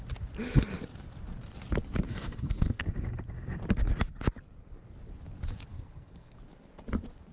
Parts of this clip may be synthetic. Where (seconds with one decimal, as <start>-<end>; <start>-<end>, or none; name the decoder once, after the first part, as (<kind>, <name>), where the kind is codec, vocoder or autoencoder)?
2.1-2.8 (codec, SNAC); 5.7-6.3